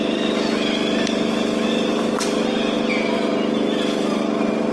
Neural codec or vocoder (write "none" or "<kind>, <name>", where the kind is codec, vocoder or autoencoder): none